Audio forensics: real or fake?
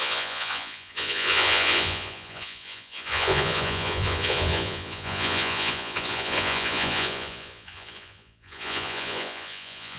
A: fake